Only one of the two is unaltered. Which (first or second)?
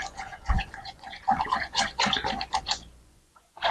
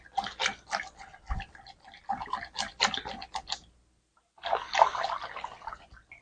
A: second